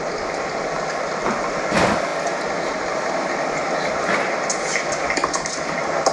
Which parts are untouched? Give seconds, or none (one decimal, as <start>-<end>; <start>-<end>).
0.0-6.1